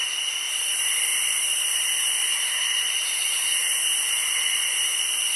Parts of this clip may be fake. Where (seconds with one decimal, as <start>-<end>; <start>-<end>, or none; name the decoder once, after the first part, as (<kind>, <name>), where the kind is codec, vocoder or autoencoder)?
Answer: 0.6-1.1 (vocoder, BigVGAN v2); 1.7-4.2